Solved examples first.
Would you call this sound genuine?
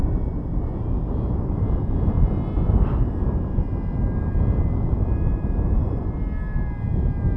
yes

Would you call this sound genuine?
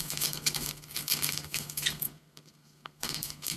no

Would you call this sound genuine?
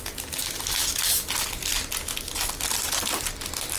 yes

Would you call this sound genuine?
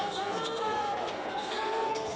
no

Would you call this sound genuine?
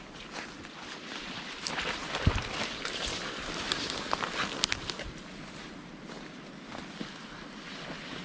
yes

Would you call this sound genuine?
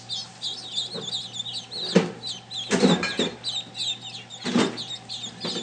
yes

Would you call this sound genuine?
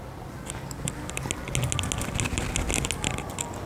yes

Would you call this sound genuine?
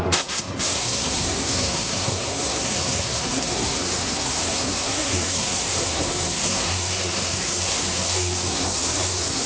no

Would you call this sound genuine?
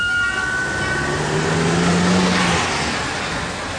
yes